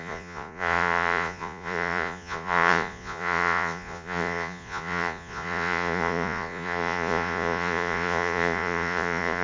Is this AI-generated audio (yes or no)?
yes